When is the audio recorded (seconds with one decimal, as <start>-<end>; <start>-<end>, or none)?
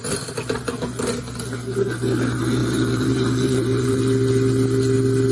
0.0-2.6; 4.0-5.3